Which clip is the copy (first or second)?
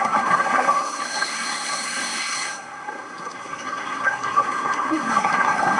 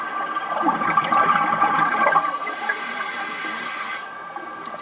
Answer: first